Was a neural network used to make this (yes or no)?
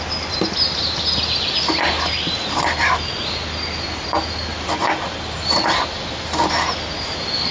no